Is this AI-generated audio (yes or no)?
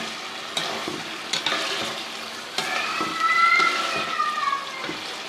no